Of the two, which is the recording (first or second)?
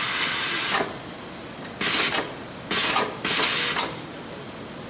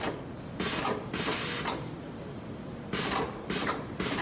first